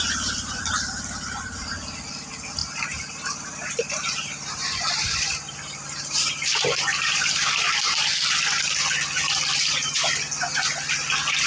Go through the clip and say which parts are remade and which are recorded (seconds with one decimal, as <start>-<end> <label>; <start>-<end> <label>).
0.0-1.2 recorded; 1.2-1.8 remade; 1.8-2.6 recorded; 2.6-7.5 remade; 7.5-11.5 recorded